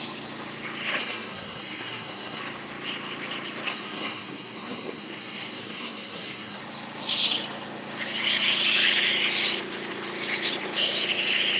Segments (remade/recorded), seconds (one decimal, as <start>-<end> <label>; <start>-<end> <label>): 0.0-1.0 recorded; 1.0-2.4 remade; 2.4-3.7 recorded; 3.7-6.6 remade; 6.6-11.6 recorded